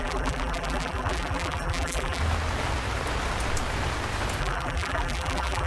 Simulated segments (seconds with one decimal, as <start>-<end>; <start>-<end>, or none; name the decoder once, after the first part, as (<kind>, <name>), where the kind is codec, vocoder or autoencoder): 0.0-2.2 (vocoder, BigVGAN v2); 4.4-5.7